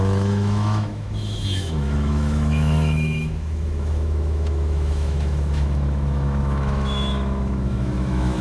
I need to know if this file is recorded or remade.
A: remade